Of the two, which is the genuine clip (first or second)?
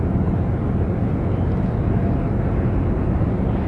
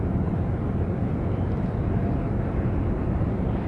first